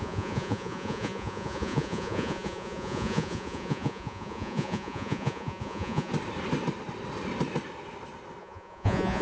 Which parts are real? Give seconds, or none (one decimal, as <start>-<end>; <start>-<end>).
6.1-8.4